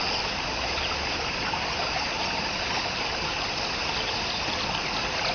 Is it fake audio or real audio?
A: real